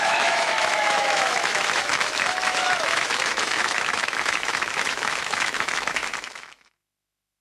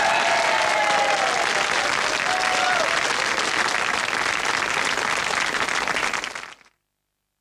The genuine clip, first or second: second